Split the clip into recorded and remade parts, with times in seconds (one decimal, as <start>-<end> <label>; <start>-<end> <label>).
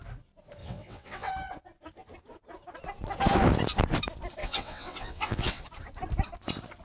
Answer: 0.0-0.6 recorded; 0.6-1.3 remade; 1.3-4.4 recorded; 4.4-5.6 remade; 5.6-6.8 recorded